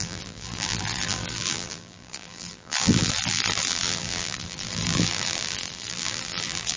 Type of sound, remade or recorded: remade